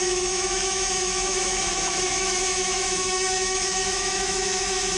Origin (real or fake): fake